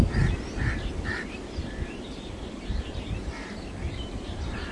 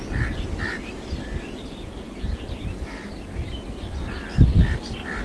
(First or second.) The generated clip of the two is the first